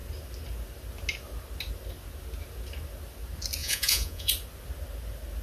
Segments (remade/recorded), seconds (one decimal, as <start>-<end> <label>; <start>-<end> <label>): 0.0-3.6 recorded; 3.6-4.3 remade; 4.3-5.4 recorded